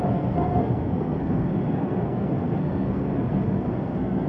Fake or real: fake